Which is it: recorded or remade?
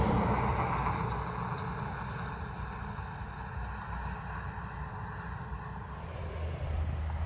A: recorded